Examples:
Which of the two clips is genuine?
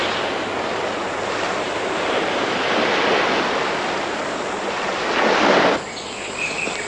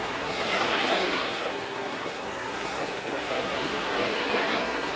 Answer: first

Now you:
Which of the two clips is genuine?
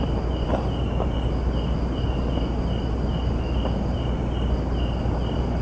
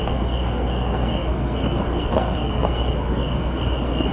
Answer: first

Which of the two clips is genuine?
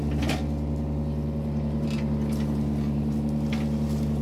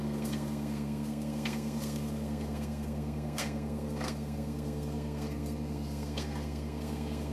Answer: first